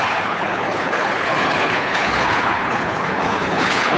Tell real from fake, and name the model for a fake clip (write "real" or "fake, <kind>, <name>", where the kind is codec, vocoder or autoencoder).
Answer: fake, codec, HILCodec